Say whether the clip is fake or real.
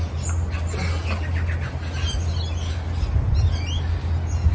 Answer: real